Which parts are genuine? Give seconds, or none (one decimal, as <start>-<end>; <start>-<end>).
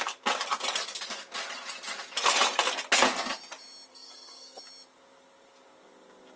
0.0-3.9; 4.6-6.4